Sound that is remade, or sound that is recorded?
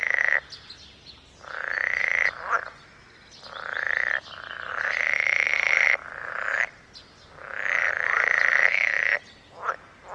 recorded